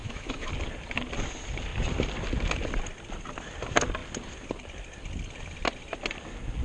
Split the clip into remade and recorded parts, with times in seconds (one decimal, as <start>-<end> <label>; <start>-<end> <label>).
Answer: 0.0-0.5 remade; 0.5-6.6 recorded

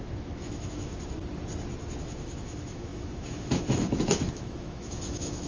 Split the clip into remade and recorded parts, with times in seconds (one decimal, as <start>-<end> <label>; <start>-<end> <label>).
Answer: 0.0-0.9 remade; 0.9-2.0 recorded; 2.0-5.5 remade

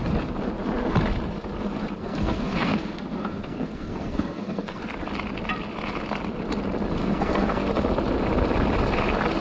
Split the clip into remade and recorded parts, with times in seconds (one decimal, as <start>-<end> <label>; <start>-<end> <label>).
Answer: 0.0-2.0 recorded; 2.0-4.8 remade; 4.8-7.0 recorded; 7.0-7.7 remade; 7.7-9.4 recorded